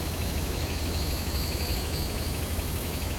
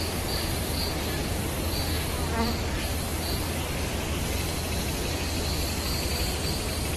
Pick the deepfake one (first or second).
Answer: first